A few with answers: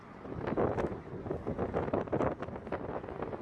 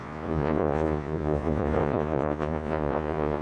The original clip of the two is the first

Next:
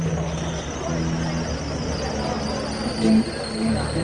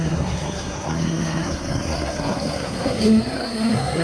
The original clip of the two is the first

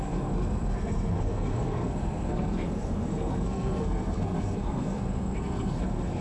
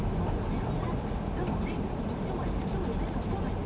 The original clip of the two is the second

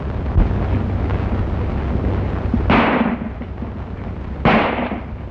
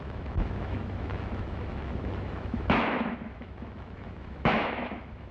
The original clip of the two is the first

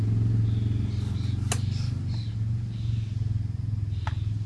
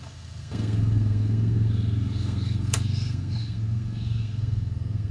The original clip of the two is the first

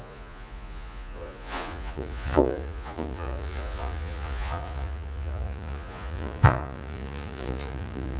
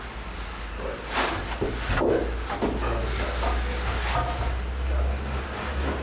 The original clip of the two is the second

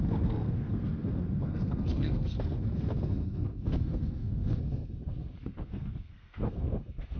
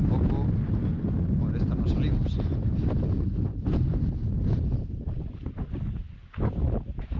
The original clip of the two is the second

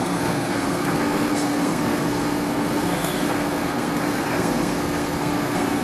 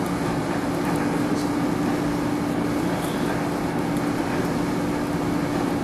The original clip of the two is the second